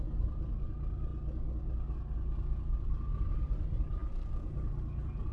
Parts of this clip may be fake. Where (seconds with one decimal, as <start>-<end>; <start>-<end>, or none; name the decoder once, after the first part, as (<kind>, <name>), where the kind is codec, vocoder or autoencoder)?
0.0-1.1 (vocoder, BigVGAN v2); 3.3-5.3